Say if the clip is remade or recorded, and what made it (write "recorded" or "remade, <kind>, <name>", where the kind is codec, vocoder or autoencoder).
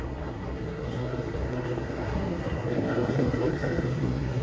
remade, codec, SNAC